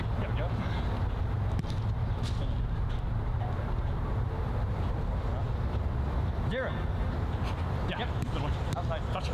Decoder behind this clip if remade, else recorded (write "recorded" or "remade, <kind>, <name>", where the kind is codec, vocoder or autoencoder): recorded